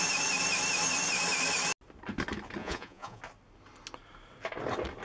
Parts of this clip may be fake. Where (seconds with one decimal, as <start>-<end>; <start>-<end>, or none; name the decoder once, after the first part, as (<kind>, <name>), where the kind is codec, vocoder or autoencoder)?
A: 2.6-3.2 (vocoder, Vocos)